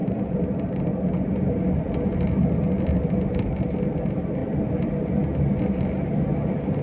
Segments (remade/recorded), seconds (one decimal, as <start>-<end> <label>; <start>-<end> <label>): 0.0-6.8 recorded